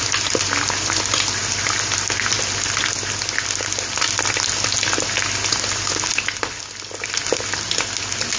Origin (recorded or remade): recorded